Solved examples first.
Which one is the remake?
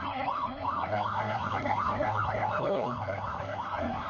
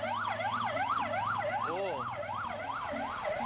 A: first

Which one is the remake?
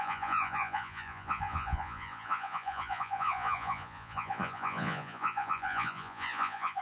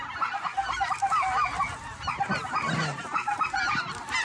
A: first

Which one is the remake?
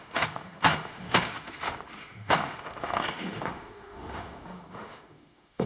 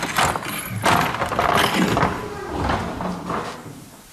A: first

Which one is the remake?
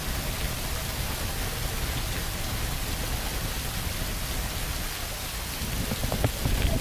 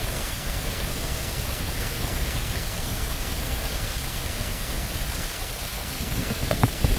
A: second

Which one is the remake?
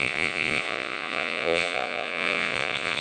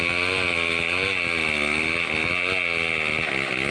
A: first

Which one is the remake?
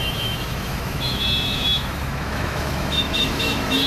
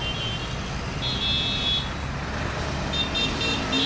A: first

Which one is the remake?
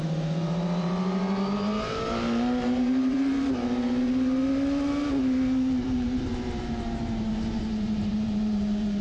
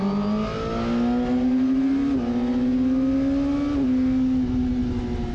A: first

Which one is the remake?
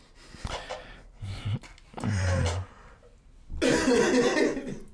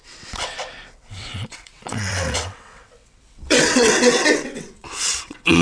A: second